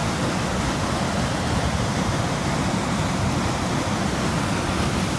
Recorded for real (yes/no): yes